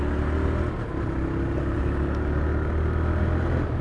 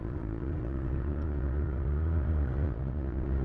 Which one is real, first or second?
first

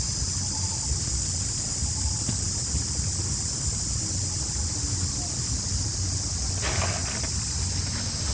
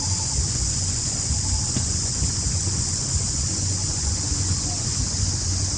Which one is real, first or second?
first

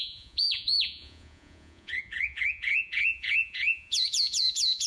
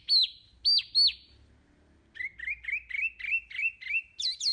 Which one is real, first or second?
second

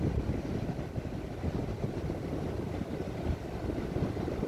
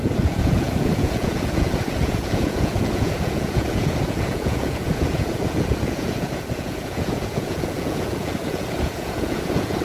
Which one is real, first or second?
first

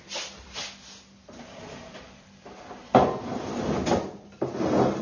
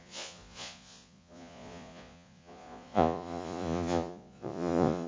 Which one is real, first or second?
first